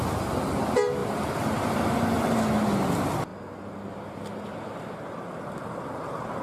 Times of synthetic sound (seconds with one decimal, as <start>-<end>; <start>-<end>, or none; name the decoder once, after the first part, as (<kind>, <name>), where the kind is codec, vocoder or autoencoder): 1.0-2.0 (vocoder, BigVGAN v2)